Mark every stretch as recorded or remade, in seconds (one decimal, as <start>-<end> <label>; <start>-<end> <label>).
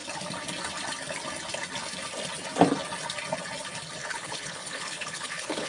0.0-4.0 recorded; 4.0-5.7 remade